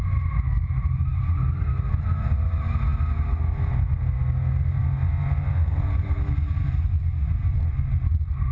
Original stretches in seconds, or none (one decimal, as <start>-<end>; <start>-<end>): 0.0-5.6; 6.2-8.5